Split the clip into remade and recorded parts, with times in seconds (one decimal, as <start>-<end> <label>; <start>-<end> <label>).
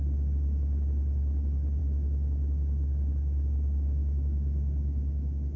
0.0-1.8 recorded; 1.8-5.6 remade